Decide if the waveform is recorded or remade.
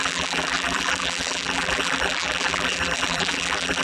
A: remade